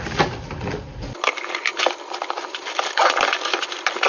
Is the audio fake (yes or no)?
no